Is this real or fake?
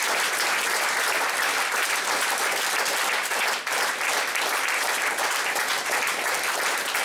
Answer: fake